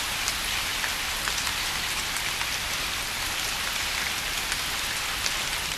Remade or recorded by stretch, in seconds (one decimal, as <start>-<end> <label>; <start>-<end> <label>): 0.0-5.8 recorded